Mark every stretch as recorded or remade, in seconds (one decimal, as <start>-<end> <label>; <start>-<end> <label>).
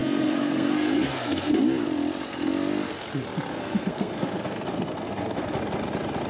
0.0-1.6 remade; 1.6-3.5 recorded; 3.5-5.6 remade; 5.6-6.3 recorded